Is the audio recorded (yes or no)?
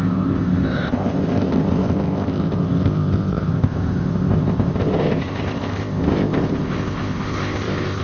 no